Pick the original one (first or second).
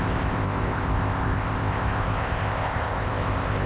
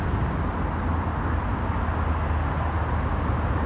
second